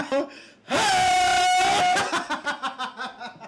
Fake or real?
real